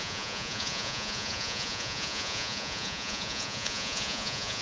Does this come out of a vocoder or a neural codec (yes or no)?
yes